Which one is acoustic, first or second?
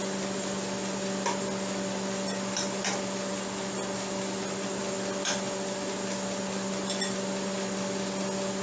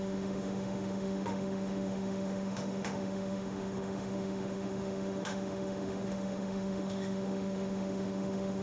first